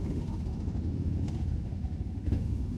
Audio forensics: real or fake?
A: fake